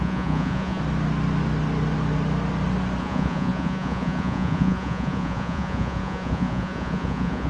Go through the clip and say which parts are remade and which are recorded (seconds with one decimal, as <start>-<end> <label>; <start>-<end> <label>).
0.0-0.8 remade; 0.8-3.0 recorded; 3.0-7.5 remade